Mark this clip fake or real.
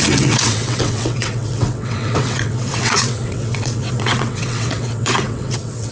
fake